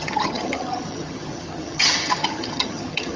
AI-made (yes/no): yes